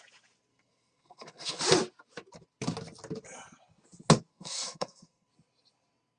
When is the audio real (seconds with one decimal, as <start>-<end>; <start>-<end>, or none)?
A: 0.0-0.5; 1.6-4.3; 5.3-6.2